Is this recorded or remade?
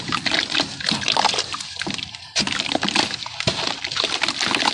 recorded